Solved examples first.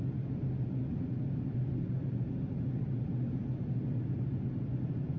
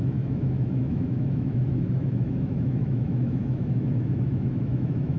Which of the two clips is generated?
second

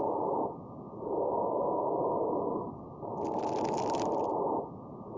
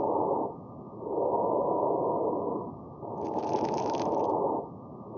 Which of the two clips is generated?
second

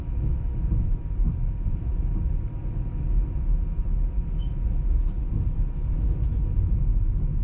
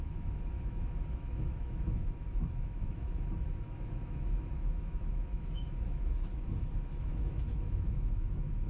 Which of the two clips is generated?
second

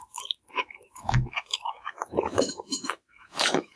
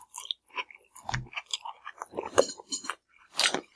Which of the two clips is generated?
first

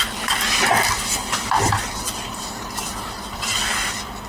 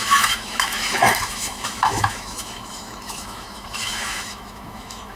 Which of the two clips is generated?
second